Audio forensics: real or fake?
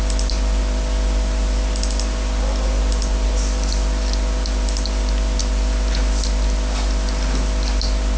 real